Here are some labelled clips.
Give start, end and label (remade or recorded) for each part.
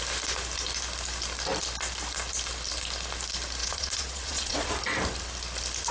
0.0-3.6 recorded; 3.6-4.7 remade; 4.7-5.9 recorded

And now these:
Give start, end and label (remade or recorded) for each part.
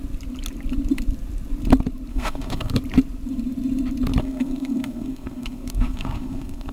0.0-2.1 recorded; 2.1-2.7 remade; 2.7-4.2 recorded; 4.2-6.7 remade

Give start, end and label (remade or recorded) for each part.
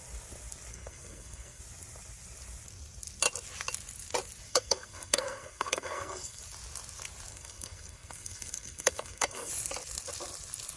0.0-0.7 recorded; 0.7-1.6 remade; 1.6-4.5 recorded; 4.5-6.4 remade; 6.4-7.3 recorded; 7.3-9.5 remade; 9.5-10.8 recorded